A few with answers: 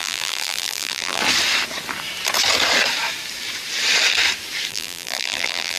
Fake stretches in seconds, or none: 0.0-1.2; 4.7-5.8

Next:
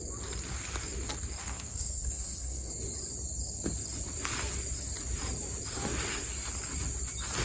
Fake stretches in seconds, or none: 1.4-2.7

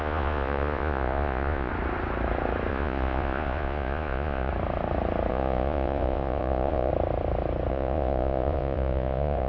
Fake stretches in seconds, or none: 0.0-1.7; 2.7-4.5; 5.3-6.9; 7.7-9.5